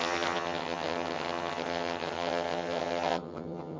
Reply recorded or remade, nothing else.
remade